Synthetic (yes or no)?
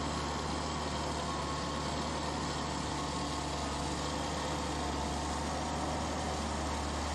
no